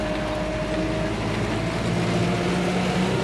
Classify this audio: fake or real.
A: real